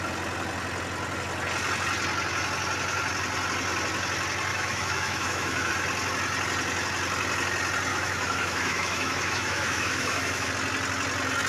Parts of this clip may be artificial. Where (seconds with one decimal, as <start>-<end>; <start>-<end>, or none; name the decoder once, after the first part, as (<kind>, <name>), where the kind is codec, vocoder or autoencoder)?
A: 4.5-5.7 (autoencoder, DAC-VAE); 7.9-10.5